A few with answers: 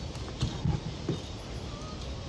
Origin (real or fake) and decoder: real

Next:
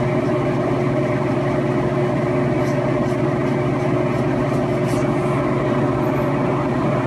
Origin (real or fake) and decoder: real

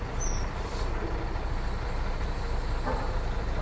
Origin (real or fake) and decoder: real